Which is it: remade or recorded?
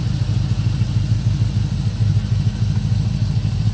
recorded